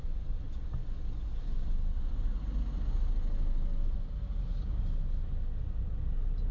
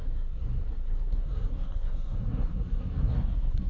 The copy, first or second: second